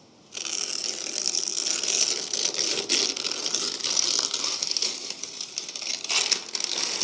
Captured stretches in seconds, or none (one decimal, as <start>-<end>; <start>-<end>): 0.0-4.6; 5.2-7.0